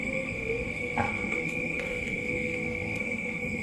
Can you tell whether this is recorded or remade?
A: remade